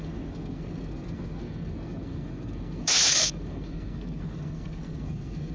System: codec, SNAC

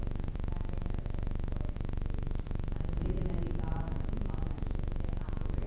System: none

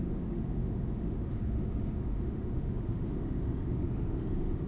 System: autoencoder, DAC-VAE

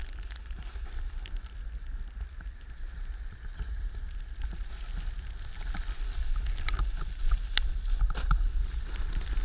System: none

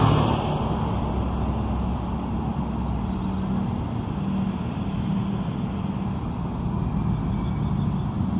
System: none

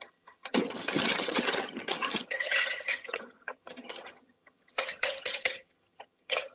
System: vocoder, HiFi-GAN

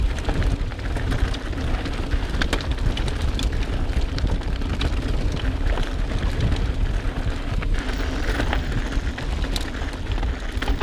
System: none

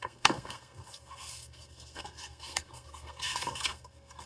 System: codec, SNAC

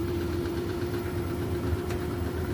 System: vocoder, BigVGAN v2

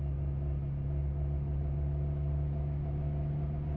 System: none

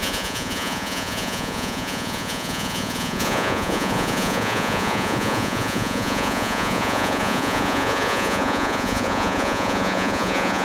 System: vocoder, Vocos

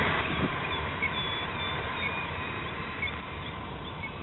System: vocoder, BigVGAN v2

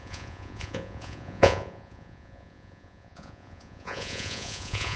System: vocoder, Vocos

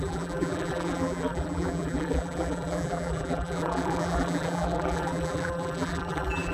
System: vocoder, BigVGAN v2